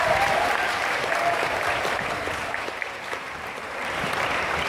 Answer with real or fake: fake